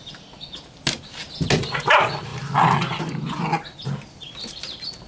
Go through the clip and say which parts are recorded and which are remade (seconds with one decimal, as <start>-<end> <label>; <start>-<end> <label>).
0.0-5.1 recorded